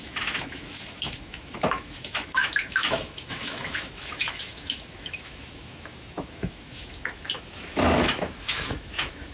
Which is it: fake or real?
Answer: fake